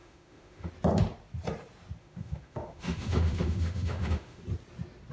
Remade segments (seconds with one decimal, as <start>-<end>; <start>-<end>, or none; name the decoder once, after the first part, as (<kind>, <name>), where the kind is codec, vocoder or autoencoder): 0.0-0.7 (autoencoder, DAC-VAE); 2.0-4.4